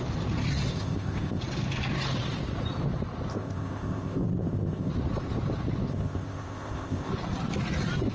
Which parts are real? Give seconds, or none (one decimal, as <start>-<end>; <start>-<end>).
0.0-0.7; 1.4-3.3; 4.9-5.9; 7.1-8.1